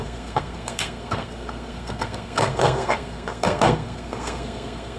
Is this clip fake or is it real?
fake